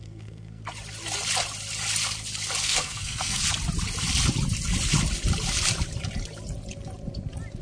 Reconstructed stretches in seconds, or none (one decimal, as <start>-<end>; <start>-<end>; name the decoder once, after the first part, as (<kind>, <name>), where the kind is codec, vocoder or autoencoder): 0.0-0.6 (codec, SNAC); 2.6-3.4